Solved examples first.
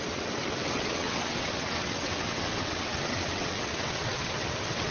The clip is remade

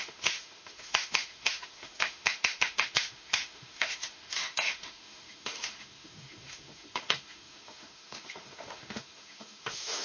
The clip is remade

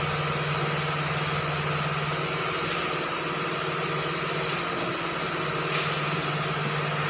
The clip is recorded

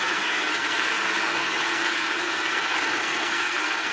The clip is remade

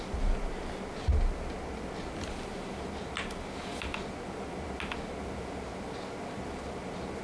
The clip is recorded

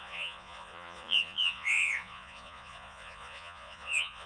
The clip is remade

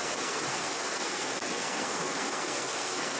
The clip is remade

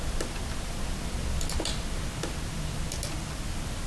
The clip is recorded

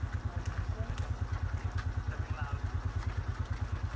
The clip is recorded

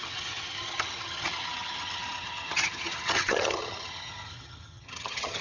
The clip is remade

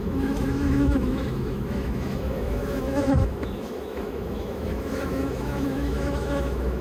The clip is remade